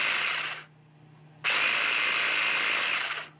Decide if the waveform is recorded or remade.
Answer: recorded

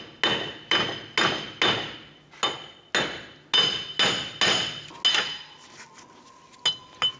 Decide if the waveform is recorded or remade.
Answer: recorded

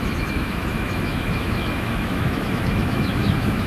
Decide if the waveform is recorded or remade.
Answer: remade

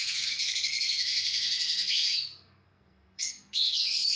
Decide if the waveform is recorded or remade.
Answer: remade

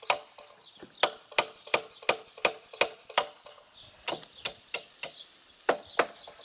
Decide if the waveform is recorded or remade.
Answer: recorded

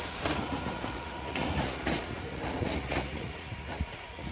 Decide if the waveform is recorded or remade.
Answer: remade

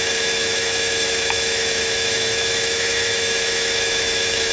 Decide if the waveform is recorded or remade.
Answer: remade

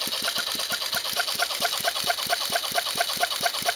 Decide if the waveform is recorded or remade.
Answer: recorded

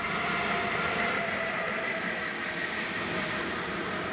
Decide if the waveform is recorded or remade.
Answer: recorded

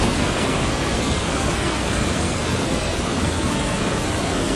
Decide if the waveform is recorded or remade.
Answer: remade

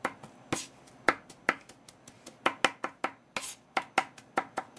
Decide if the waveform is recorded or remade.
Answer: recorded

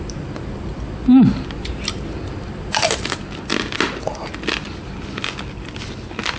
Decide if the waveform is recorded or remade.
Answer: recorded